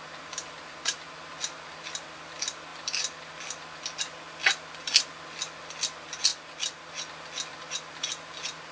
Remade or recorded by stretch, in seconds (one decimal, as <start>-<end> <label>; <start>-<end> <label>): 0.0-8.7 recorded